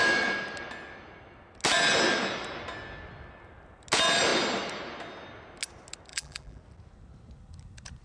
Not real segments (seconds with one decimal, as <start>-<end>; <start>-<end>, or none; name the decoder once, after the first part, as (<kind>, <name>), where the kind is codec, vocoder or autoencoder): 6.1-6.6 (vocoder, BigVGAN v2)